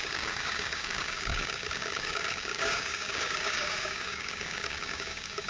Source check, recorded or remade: remade